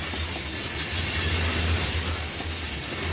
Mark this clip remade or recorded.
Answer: recorded